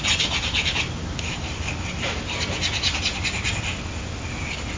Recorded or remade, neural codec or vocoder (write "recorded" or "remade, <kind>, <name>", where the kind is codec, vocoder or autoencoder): recorded